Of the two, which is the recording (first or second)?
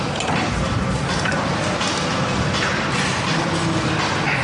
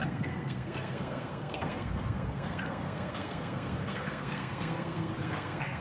first